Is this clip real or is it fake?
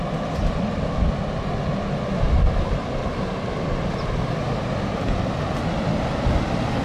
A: real